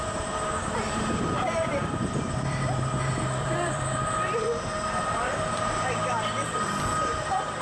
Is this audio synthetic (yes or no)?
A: yes